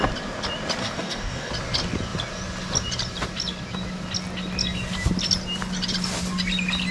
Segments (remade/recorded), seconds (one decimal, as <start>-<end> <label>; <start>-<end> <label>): 0.0-0.8 recorded; 0.8-1.5 remade; 1.5-6.9 recorded